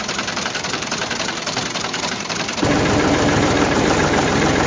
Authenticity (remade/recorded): remade